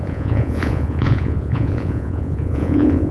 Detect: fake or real fake